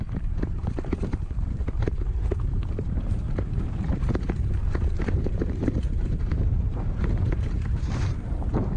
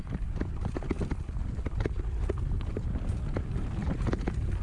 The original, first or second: second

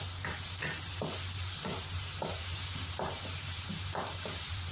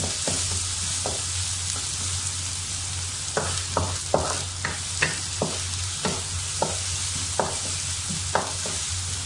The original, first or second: second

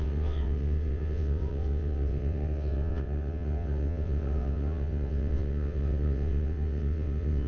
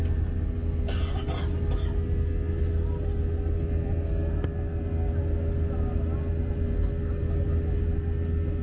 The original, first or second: second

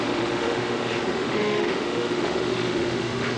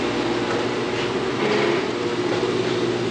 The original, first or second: second